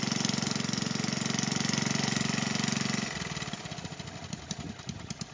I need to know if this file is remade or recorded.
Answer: recorded